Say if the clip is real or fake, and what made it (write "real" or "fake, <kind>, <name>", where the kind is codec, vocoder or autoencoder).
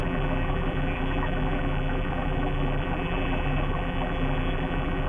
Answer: fake, vocoder, BigVGAN v2